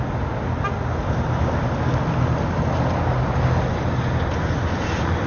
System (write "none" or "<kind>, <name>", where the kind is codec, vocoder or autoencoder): none